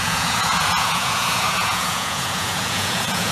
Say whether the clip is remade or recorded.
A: remade